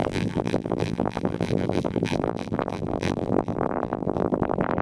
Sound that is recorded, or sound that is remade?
remade